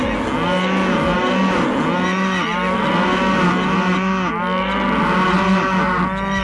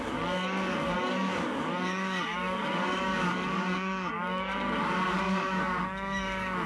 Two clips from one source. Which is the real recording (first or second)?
first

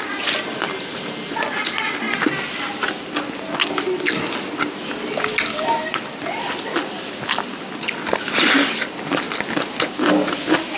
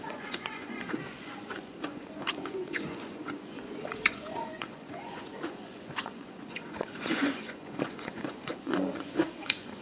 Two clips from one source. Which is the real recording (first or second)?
first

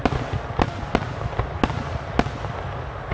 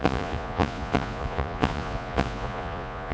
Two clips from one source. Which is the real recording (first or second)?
first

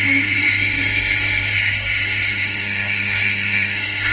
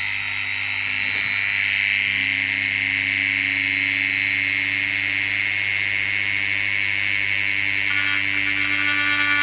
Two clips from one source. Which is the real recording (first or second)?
second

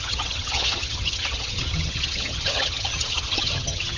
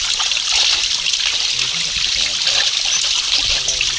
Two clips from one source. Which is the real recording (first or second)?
second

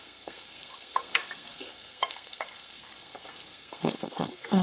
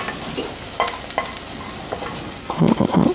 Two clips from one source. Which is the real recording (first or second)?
second